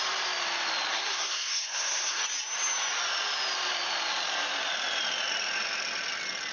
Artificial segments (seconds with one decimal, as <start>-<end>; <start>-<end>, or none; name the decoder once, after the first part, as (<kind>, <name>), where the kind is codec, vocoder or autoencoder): 0.9-2.2 (codec, SNAC)